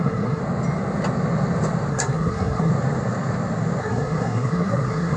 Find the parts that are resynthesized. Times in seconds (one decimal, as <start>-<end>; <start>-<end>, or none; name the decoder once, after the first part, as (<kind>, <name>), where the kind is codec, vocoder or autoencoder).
0.0-0.4 (codec, SNAC); 1.9-2.7; 3.8-5.2